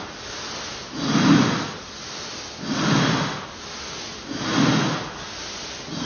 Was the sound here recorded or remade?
recorded